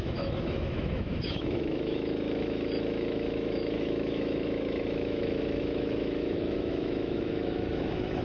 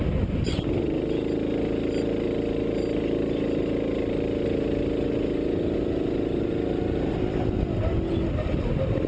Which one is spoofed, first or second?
first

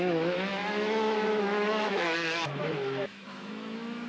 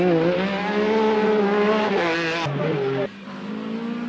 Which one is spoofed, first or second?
first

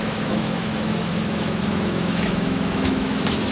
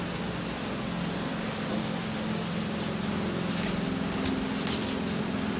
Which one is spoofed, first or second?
first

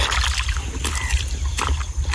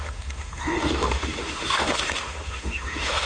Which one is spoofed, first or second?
second